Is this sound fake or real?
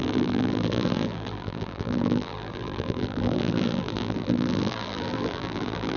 fake